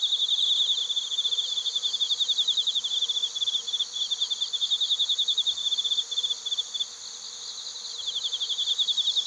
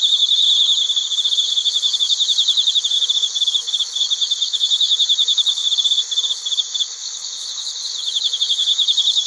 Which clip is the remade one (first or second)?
second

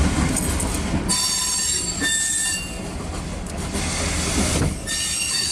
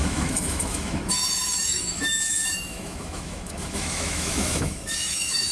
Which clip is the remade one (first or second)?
second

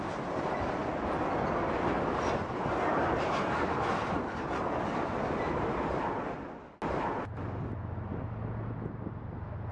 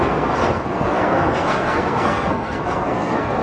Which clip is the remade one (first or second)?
second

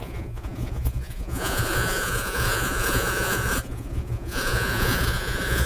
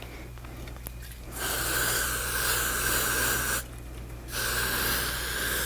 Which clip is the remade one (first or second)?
first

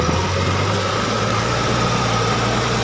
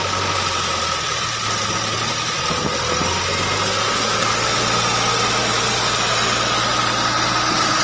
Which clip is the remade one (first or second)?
first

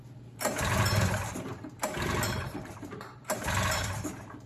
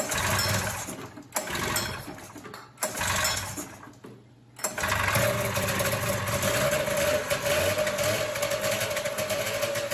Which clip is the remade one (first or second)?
first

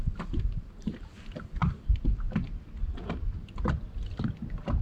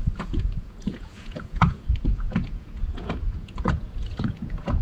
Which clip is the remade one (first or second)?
second